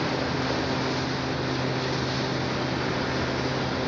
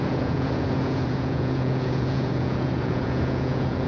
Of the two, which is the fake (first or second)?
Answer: second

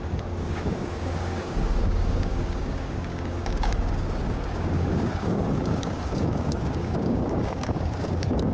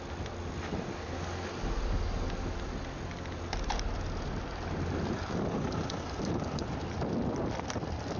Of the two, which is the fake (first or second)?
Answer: first